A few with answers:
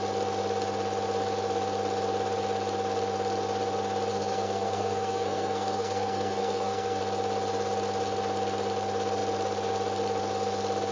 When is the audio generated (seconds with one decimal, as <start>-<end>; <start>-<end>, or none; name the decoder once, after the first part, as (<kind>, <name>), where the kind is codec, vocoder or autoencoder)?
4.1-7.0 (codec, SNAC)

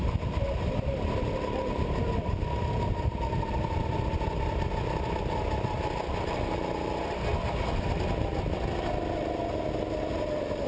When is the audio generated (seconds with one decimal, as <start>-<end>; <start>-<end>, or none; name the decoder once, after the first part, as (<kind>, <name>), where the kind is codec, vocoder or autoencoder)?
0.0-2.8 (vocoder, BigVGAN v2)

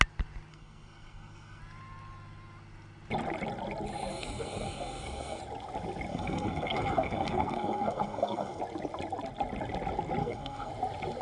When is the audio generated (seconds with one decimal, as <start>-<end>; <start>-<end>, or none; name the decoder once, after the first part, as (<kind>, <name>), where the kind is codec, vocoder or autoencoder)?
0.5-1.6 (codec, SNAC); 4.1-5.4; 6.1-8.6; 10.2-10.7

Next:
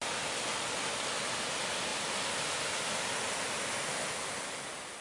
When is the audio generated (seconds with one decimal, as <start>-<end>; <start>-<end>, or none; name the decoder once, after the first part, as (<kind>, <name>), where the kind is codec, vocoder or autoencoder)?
none

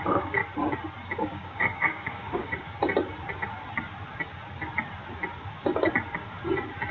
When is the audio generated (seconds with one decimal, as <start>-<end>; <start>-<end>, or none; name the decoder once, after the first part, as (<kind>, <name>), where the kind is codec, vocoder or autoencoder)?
0.0-0.4 (codec, DAC); 1.2-2.8

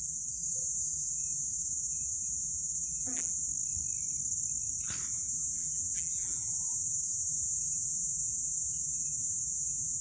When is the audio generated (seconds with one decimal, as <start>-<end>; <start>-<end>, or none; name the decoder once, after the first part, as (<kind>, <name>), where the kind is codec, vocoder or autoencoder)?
0.0-3.5 (vocoder, BigVGAN v2); 5.1-10.0

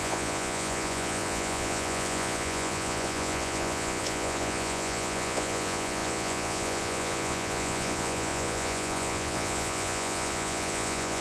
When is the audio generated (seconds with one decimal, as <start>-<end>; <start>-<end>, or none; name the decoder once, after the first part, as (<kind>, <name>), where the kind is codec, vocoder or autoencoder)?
0.0-11.2 (vocoder, Vocos)

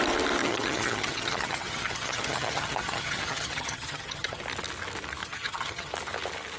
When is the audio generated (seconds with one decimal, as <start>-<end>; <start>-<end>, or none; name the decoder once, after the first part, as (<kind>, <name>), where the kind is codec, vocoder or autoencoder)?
0.4-4.4 (vocoder, HiFi-GAN); 5.2-5.9